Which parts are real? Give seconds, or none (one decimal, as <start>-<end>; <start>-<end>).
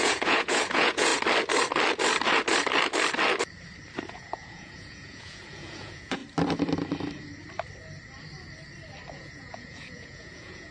1.1-4.1; 6.2-9.1